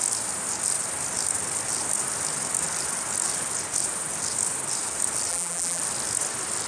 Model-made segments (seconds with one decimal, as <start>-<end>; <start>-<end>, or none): 5.3-5.8